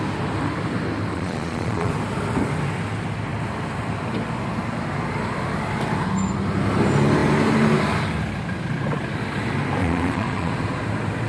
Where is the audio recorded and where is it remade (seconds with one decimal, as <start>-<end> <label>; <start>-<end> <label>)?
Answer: 0.0-1.1 recorded; 1.1-1.9 remade; 1.9-9.8 recorded; 9.8-10.5 remade; 10.5-11.3 recorded